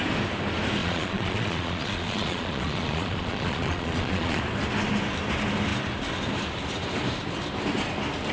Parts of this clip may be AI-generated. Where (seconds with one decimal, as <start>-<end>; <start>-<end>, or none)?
0.8-4.4